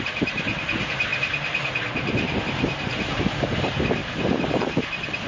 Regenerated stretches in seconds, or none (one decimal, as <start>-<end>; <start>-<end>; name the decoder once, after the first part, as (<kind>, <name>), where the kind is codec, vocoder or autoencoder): 0.0-4.0 (vocoder, BigVGAN v2)